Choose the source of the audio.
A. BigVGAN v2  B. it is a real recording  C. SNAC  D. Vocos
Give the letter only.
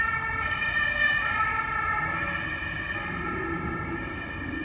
A